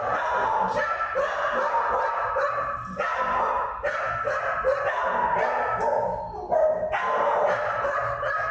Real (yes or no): yes